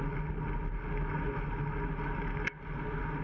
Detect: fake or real real